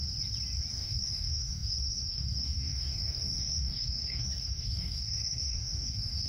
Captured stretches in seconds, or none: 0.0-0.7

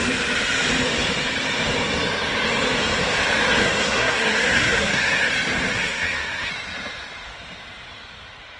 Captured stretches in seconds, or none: 0.0-3.6; 5.3-5.7; 6.5-8.6

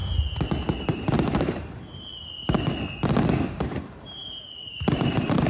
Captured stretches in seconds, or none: 0.0-0.8; 2.1-3.5

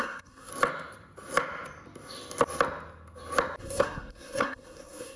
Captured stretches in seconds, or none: 0.5-3.6

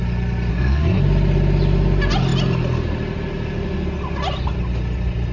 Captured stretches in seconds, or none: 0.0-0.5; 1.0-5.3

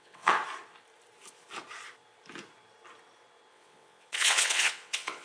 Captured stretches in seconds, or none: 0.4-3.5